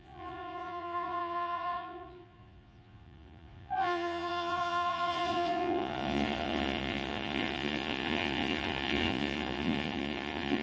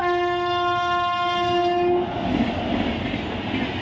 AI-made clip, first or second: first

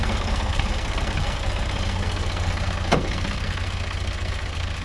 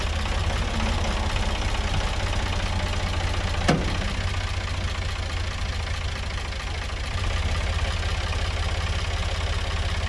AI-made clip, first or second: first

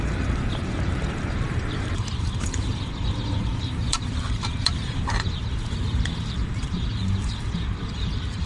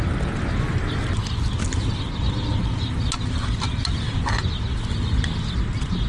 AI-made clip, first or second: first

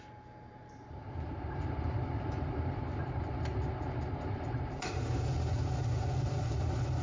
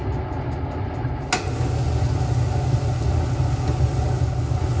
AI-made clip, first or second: first